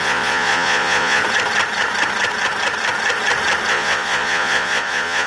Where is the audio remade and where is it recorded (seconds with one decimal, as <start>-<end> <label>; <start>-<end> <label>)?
0.0-1.2 remade; 1.2-3.7 recorded; 3.7-5.3 remade